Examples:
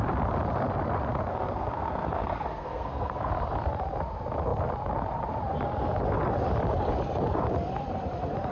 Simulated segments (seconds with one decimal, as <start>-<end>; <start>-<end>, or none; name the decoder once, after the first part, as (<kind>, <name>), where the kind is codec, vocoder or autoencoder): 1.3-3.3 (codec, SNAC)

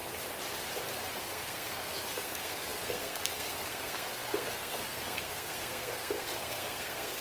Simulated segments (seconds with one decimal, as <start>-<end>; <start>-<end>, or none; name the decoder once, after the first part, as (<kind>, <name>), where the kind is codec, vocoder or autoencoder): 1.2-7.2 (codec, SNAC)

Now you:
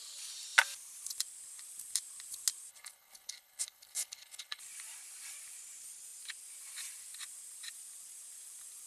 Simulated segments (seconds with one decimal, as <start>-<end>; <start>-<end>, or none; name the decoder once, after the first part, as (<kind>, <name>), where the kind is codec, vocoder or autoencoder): 2.7-4.6 (codec, HILCodec)